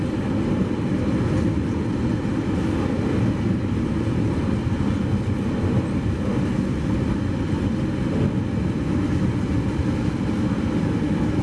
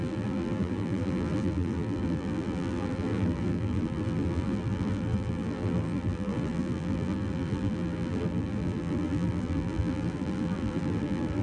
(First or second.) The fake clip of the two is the second